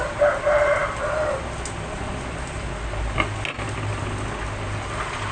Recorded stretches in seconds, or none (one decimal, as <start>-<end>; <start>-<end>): 0.0-5.3